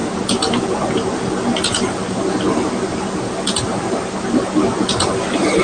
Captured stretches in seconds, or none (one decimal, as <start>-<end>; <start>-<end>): 0.0-5.6